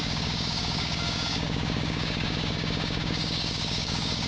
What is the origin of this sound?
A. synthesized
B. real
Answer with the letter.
A